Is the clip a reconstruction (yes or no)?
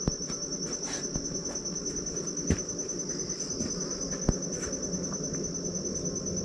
no